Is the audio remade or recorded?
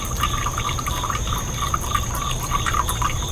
remade